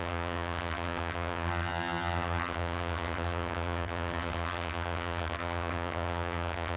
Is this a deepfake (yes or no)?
yes